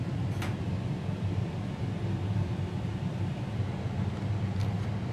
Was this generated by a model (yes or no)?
yes